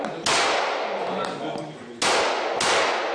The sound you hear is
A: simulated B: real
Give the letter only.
B